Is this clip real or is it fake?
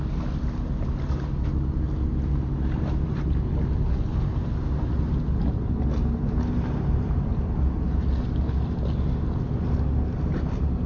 real